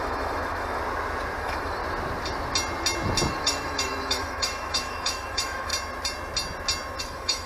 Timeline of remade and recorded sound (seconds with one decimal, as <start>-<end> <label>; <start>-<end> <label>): 0.0-0.8 remade; 0.8-1.4 recorded; 1.4-1.8 remade; 1.8-3.3 recorded; 3.3-5.7 remade; 5.7-7.0 recorded; 7.0-7.5 remade